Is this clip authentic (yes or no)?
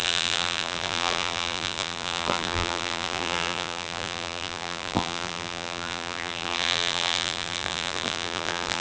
no